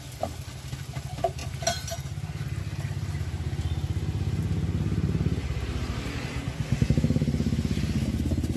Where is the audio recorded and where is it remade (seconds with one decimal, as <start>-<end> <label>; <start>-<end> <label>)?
0.0-8.6 recorded